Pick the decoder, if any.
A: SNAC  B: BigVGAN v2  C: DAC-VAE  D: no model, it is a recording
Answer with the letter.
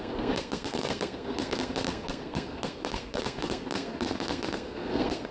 A